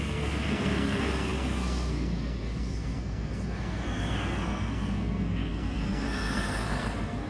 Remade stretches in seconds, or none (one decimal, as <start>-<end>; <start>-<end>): 0.0-7.3